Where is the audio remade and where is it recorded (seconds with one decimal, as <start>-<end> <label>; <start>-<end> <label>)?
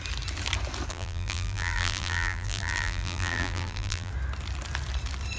0.0-0.9 recorded; 0.9-4.1 remade; 4.1-5.4 recorded